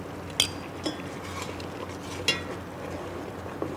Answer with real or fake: real